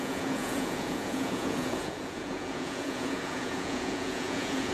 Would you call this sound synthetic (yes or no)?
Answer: yes